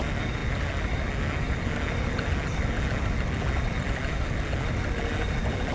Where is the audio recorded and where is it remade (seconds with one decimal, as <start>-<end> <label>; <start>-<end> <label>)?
0.0-5.7 recorded

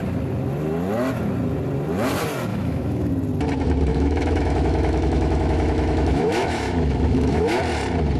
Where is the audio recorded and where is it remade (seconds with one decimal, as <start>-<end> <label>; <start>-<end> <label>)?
0.0-2.5 recorded; 2.5-3.1 remade; 3.1-3.9 recorded; 3.9-7.6 remade; 7.6-8.2 recorded

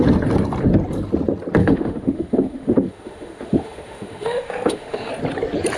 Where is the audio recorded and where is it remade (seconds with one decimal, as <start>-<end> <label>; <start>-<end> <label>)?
0.0-1.6 recorded; 1.6-5.1 remade; 5.1-5.8 recorded

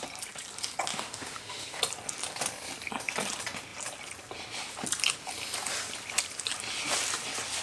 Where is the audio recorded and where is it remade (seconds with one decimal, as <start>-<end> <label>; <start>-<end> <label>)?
0.0-0.9 recorded; 0.9-1.8 remade; 1.8-7.6 recorded

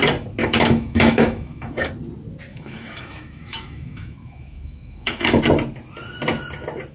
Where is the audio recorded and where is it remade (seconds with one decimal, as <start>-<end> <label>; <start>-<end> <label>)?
0.0-0.4 recorded; 0.4-1.9 remade; 1.9-2.5 recorded; 2.5-5.4 remade; 5.4-6.9 recorded

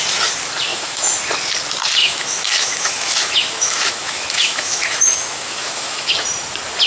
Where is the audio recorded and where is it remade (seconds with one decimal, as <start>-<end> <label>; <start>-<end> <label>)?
0.0-0.7 recorded; 0.7-1.2 remade; 1.2-2.0 recorded; 2.0-6.1 remade; 6.1-6.9 recorded

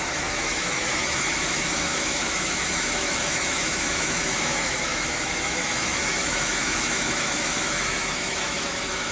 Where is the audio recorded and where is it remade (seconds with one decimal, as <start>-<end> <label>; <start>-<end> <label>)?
0.0-9.1 remade